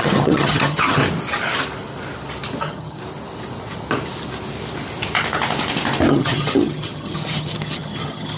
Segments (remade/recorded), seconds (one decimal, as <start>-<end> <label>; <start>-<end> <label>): 0.0-1.0 remade; 1.0-2.6 recorded; 2.6-3.0 remade; 3.0-6.1 recorded; 6.1-8.4 remade